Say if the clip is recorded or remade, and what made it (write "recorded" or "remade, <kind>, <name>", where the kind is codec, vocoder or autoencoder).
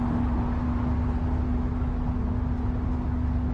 recorded